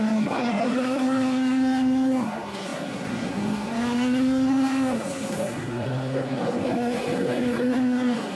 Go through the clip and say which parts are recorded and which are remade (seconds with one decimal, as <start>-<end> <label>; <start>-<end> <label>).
0.0-8.3 remade